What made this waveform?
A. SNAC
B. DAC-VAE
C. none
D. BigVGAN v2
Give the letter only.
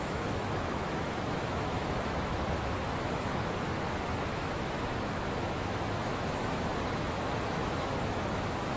B